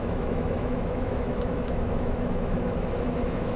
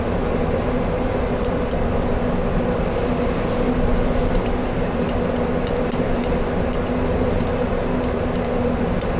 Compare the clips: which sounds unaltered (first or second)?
second